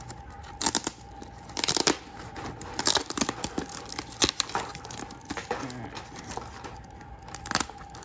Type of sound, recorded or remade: recorded